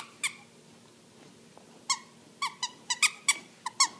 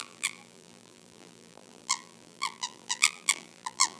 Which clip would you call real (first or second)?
first